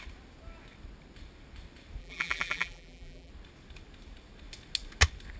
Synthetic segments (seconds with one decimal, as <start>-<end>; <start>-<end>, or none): 2.0-3.3

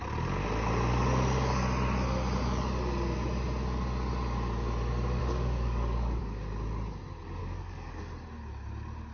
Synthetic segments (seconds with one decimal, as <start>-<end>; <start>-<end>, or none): 5.2-6.2; 7.4-8.0

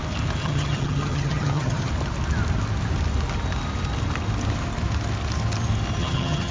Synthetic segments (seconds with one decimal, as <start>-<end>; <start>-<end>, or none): 0.4-1.9; 6.0-6.5

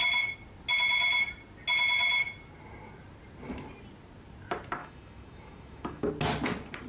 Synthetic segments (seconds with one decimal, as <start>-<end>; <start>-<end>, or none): 4.8-6.1

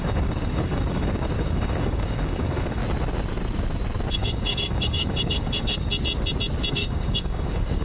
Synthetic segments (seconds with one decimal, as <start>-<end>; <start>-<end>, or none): 0.0-2.8; 4.1-5.9; 6.7-7.8

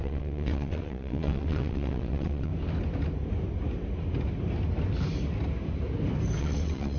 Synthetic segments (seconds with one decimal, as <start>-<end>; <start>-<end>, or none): 0.0-2.5; 6.4-7.0

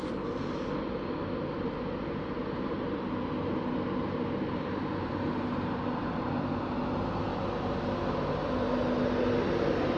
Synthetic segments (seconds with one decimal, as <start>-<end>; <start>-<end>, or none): none